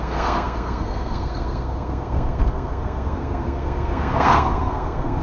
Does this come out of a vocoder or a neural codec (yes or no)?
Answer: yes